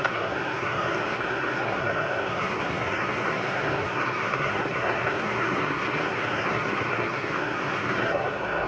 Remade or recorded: remade